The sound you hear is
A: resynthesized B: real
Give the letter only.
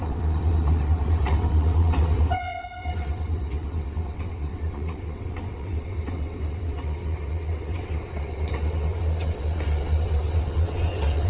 A